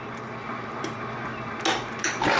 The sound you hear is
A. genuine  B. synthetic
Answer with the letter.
A